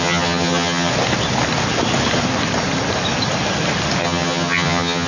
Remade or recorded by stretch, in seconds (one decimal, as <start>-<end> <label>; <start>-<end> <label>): 0.0-0.9 remade; 0.9-4.0 recorded; 4.0-5.1 remade